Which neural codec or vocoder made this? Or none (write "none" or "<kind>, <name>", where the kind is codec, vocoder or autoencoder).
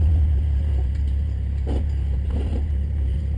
none